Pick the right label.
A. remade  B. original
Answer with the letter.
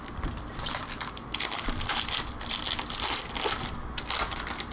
B